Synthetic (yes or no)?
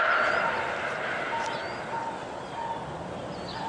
no